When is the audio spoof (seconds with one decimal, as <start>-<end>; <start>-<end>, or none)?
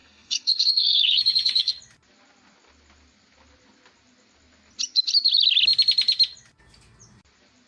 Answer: 0.0-1.7